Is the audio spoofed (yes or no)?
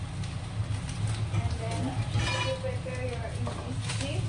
no